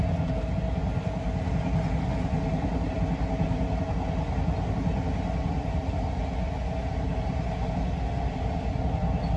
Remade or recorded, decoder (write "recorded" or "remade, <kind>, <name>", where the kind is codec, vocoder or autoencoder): recorded